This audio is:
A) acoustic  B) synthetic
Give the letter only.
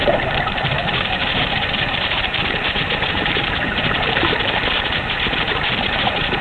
B